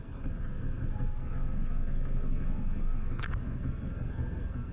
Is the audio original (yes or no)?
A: no